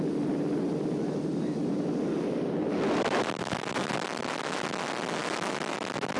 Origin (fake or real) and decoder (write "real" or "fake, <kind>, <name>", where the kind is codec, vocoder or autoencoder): real